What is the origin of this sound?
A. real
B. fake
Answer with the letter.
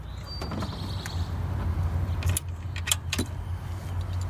A